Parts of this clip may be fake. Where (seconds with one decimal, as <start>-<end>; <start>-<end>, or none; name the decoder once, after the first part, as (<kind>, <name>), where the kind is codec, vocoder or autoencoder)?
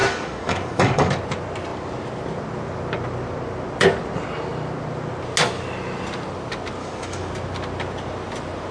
0.0-1.1 (codec, DAC); 6.8-7.3